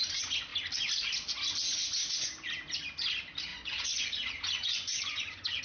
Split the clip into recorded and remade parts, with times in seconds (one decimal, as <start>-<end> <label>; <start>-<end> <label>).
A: 0.0-3.5 recorded; 3.5-5.6 remade